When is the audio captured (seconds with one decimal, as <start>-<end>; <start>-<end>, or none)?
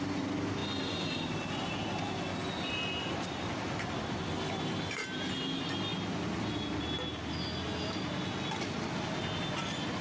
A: 0.0-10.0